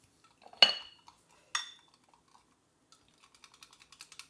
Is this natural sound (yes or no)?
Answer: yes